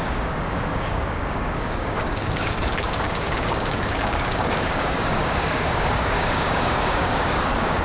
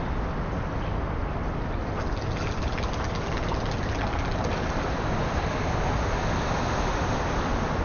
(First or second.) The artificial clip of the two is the first